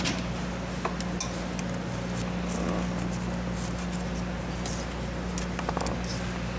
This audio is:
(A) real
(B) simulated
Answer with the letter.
A